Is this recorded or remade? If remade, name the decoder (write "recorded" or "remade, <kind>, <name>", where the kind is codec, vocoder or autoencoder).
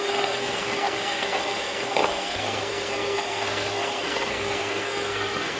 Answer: remade, codec, SNAC